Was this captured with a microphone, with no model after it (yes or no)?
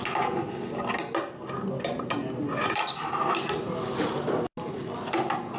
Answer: yes